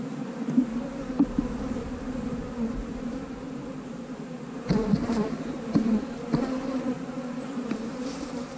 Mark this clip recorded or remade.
remade